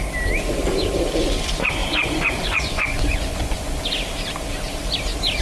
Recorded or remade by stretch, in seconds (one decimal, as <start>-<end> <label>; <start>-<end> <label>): 0.0-1.8 recorded; 1.8-3.8 remade; 3.8-5.4 recorded

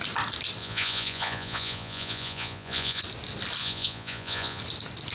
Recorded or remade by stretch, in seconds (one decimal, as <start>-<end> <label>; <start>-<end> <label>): 0.0-0.6 recorded; 0.6-3.0 remade; 3.0-3.6 recorded; 3.6-4.6 remade; 4.6-5.1 recorded

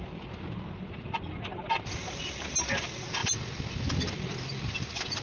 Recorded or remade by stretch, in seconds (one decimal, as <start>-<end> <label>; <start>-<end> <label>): 0.0-5.2 recorded

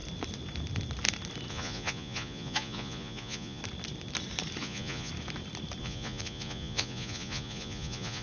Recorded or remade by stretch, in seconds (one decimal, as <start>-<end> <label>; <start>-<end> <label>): 0.0-1.5 recorded; 1.5-3.6 remade; 3.6-4.6 recorded; 4.6-5.1 remade; 5.1-5.8 recorded; 5.8-8.2 remade

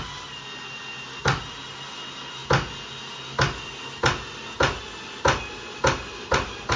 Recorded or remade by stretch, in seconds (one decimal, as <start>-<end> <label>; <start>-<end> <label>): 0.0-6.8 recorded

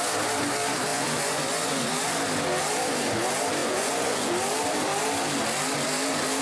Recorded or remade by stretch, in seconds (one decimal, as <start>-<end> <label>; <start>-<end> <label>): 0.0-0.9 recorded; 0.9-2.1 remade; 2.1-3.6 recorded; 3.6-4.3 remade; 4.3-6.4 recorded

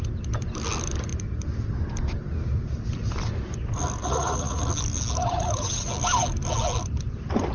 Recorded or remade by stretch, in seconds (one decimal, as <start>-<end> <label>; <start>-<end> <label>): 0.0-4.0 recorded; 4.0-4.6 remade; 4.6-5.2 recorded; 5.2-5.9 remade; 5.9-7.5 recorded

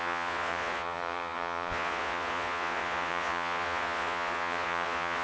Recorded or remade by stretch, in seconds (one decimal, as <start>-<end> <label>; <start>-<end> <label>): 0.0-5.2 remade